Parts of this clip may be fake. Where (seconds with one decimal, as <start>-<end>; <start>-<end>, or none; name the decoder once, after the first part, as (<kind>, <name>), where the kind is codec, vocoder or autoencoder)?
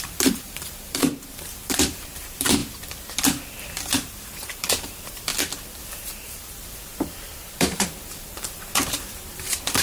0.0-2.6 (vocoder, BigVGAN v2); 3.6-5.3; 6.1-9.8